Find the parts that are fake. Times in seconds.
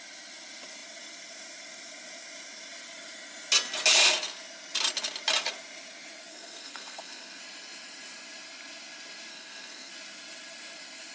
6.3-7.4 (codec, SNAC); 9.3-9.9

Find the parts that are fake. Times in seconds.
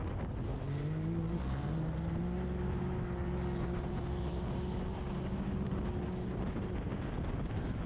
4.2-7.9 (codec, DAC)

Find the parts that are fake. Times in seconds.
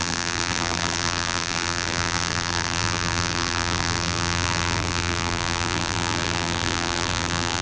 0.0-7.6 (vocoder, BigVGAN v2)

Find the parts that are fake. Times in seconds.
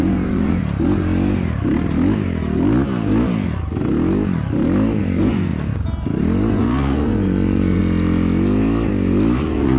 0.0-0.6 (vocoder, Vocos); 5.0-5.5; 6.5-7.8; 9.4-9.8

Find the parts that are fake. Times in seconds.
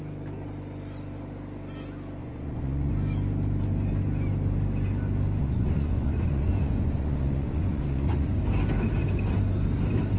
2.2-2.9 (vocoder, Vocos); 5.4-8.4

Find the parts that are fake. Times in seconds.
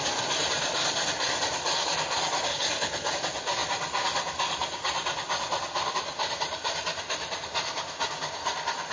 2.5-3.1 (codec, HILCodec)